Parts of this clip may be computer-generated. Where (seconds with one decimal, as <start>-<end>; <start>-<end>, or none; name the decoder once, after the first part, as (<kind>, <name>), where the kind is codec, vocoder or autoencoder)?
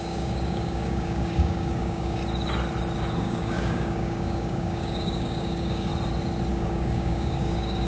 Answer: 0.0-2.2 (codec, DAC); 3.2-5.9; 6.5-7.9